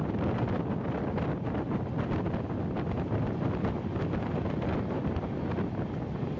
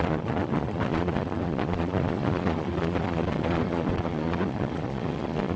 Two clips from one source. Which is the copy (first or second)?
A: second